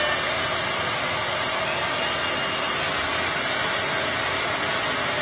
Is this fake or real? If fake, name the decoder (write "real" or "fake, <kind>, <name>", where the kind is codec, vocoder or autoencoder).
real